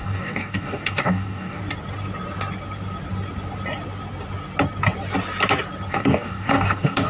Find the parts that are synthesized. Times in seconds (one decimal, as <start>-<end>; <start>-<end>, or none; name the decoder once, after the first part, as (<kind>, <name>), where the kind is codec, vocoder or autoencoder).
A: 0.0-1.6 (codec, DAC); 5.9-7.1

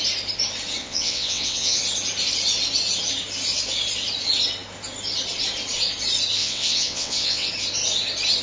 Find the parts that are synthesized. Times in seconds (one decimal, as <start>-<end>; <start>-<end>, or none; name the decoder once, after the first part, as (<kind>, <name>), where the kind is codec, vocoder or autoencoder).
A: 0.8-1.8 (vocoder, WaveNeXt); 6.4-7.5

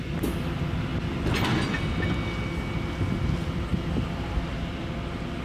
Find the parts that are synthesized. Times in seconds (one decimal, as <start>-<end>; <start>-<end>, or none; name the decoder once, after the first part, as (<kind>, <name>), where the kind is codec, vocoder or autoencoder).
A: none

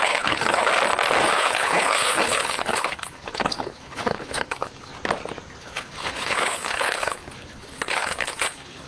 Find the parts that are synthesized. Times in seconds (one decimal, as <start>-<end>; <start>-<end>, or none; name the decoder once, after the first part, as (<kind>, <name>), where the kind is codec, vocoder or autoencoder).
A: 0.0-0.7 (codec, HILCodec); 1.3-4.9; 5.6-8.9